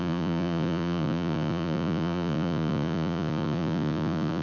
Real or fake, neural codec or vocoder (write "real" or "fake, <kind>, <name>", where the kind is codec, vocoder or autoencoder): fake, vocoder, Vocos